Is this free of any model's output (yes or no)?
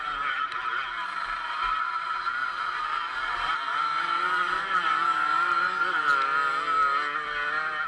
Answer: yes